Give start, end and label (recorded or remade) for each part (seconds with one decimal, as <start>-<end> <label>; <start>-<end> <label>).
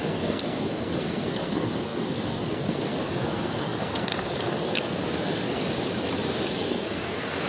0.0-5.6 remade; 5.6-6.5 recorded; 6.5-7.5 remade